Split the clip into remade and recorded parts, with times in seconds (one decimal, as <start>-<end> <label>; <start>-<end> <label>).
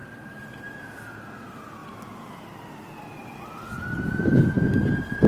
0.0-5.3 recorded